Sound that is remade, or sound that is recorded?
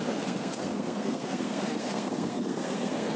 remade